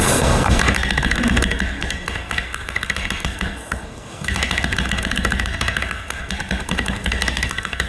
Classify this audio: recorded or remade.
remade